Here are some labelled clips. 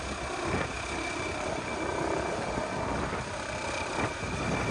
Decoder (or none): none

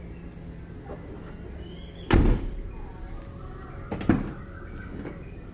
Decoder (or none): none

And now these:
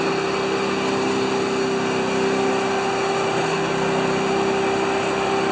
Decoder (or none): none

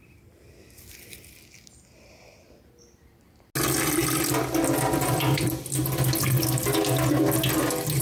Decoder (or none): none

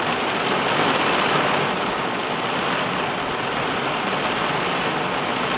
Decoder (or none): none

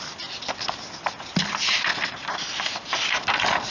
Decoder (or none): none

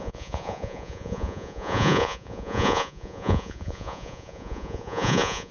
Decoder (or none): vocoder, Vocos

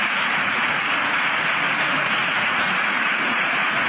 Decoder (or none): vocoder, Vocos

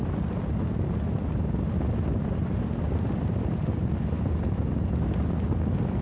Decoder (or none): none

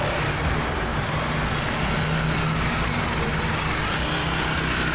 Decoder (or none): none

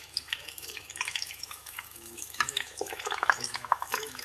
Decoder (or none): autoencoder, DAC-VAE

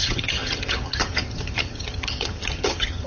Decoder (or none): vocoder, HiFi-GAN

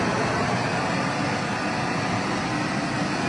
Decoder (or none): none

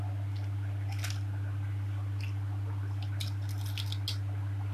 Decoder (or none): none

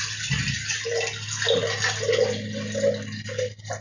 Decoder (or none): none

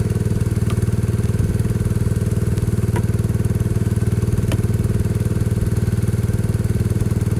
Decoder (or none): none